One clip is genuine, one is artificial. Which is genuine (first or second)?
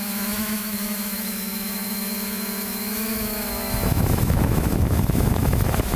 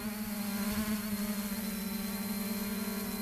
second